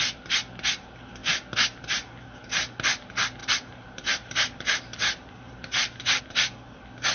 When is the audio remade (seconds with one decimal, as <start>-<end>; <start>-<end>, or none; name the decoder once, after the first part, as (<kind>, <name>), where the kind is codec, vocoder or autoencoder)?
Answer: 3.4-6.2 (vocoder, BigVGAN v2)